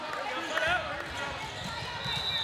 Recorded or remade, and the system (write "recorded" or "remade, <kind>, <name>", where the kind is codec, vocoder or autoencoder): recorded